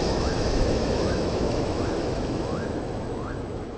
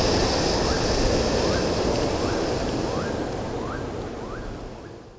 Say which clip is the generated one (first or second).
first